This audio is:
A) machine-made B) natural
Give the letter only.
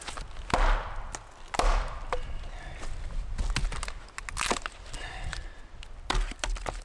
B